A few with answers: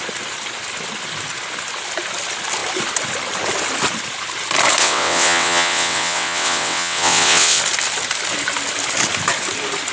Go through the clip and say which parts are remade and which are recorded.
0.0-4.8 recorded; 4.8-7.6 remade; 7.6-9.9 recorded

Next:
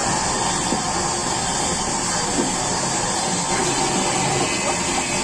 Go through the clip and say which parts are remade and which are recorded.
0.0-5.2 recorded

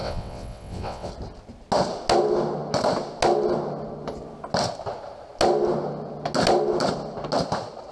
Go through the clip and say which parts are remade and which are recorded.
0.0-1.1 remade; 1.1-7.9 recorded